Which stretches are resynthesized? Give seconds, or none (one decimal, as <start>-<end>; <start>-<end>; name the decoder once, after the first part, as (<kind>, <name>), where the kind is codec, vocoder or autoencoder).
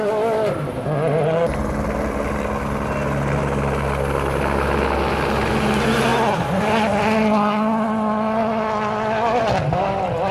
none